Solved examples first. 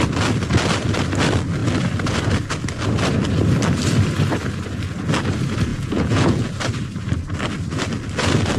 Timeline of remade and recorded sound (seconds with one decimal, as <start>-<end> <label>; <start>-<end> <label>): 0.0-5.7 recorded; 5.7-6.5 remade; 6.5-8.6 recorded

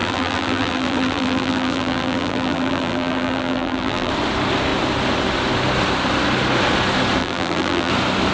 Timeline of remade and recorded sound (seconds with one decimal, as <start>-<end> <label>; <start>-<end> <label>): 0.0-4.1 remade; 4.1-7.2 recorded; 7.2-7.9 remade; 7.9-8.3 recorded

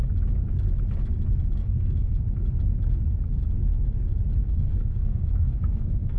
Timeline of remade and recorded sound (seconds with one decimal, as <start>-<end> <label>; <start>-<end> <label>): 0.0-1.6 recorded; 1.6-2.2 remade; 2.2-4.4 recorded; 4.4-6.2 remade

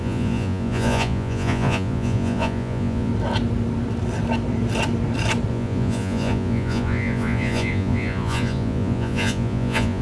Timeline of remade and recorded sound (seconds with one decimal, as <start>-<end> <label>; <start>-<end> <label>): 0.0-3.1 remade; 3.1-5.5 recorded; 5.5-10.0 remade